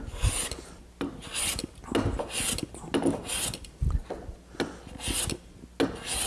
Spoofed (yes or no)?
no